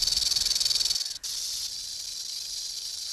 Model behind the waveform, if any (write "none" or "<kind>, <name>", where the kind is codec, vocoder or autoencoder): none